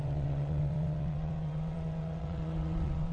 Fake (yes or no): yes